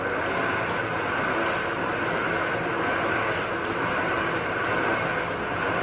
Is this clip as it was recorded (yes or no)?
yes